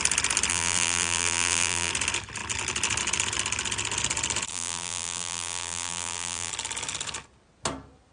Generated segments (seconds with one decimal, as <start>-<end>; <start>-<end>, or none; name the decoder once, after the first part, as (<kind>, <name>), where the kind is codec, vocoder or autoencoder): 0.5-1.9 (vocoder, BigVGAN v2); 4.5-6.5